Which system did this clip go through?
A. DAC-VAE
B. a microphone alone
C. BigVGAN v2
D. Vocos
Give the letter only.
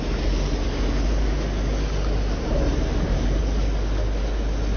B